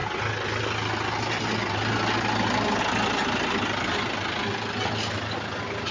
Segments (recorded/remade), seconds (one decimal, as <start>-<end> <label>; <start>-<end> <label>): 0.0-5.9 recorded